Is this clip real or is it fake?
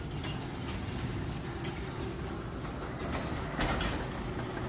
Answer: real